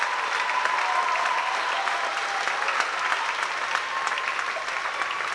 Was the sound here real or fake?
real